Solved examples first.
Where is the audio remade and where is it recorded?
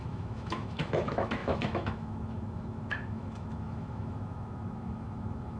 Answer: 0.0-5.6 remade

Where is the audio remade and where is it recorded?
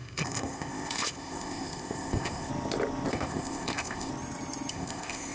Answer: 0.0-2.5 remade; 2.5-3.1 recorded; 3.1-4.1 remade; 4.1-4.7 recorded; 4.7-5.3 remade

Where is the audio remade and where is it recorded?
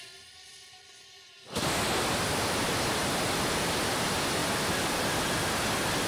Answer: 0.0-6.1 recorded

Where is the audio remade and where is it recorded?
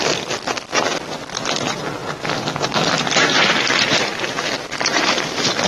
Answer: 0.0-2.0 recorded; 2.0-4.3 remade; 4.3-5.7 recorded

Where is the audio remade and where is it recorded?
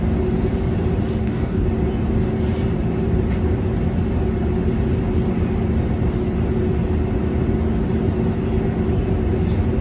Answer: 0.0-1.2 recorded; 1.2-1.7 remade; 1.7-9.8 recorded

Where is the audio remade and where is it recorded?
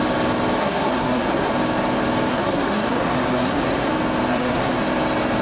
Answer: 0.0-0.6 recorded; 0.6-1.5 remade; 1.5-2.3 recorded; 2.3-3.9 remade; 3.9-4.3 recorded; 4.3-4.8 remade; 4.8-5.4 recorded